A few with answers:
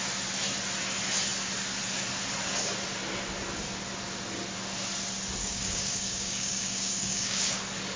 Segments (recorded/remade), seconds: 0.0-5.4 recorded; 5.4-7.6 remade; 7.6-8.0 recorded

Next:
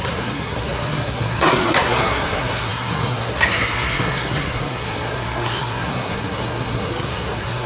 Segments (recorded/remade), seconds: 0.0-7.7 remade

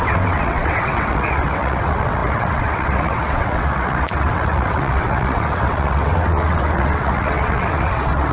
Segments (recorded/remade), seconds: 0.0-8.3 remade

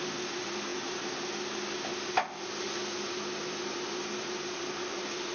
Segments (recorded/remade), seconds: 0.0-5.3 recorded

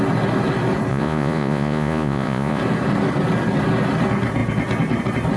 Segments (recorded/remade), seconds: 0.0-0.9 recorded; 0.9-2.6 remade; 2.6-5.4 recorded

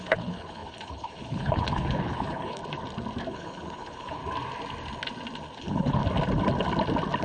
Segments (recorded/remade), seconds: 0.0-2.6 remade; 2.6-3.3 recorded; 3.3-4.2 remade; 4.2-5.6 recorded; 5.6-6.0 remade; 6.0-7.2 recorded

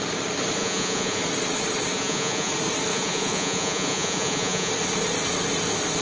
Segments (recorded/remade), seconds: 0.0-0.6 recorded; 0.6-1.2 remade; 1.2-1.9 recorded; 1.9-2.5 remade; 2.5-2.9 recorded; 2.9-4.7 remade; 4.7-6.0 recorded